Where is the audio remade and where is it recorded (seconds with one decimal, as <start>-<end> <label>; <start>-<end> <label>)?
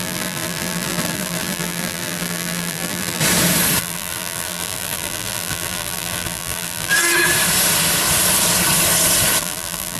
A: 0.0-3.2 remade; 3.2-3.8 recorded; 3.8-6.9 remade; 6.9-9.4 recorded; 9.4-10.0 remade